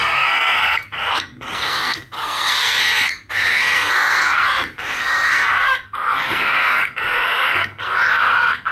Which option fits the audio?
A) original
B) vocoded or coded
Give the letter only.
B